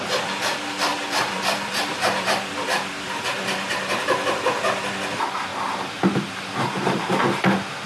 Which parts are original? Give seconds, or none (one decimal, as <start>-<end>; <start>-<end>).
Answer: 0.0-0.9; 3.9-5.5; 7.2-7.9